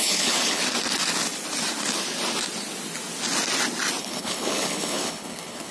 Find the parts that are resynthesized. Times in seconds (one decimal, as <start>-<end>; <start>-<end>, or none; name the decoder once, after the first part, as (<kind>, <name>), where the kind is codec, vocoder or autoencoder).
0.0-0.6 (codec, HILCodec); 4.0-5.7